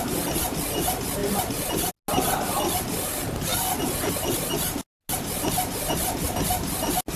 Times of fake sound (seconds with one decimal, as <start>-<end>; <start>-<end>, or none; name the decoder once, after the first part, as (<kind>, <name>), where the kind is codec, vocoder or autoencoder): none

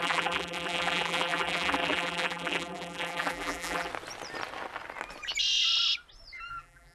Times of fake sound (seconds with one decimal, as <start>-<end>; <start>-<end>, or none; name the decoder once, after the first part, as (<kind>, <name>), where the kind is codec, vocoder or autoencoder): 0.0-3.9 (vocoder, BigVGAN v2); 6.5-6.9